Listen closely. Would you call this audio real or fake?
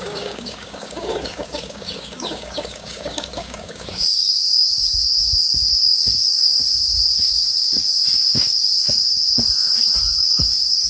fake